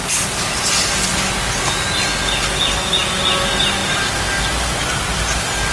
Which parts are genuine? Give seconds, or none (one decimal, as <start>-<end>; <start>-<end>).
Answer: 1.0-5.7